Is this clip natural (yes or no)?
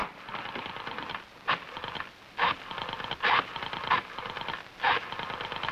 yes